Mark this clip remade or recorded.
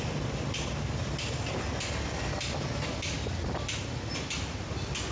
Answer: recorded